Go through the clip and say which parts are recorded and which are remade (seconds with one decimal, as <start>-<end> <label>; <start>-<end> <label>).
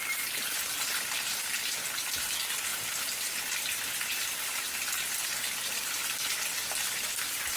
0.0-7.6 recorded